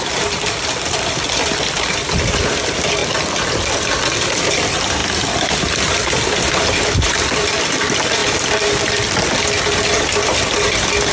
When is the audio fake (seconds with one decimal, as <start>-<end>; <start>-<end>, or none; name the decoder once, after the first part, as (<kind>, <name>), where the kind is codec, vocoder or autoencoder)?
0.0-3.0 (vocoder, BigVGAN v2); 4.5-5.0; 5.5-8.2; 8.7-11.1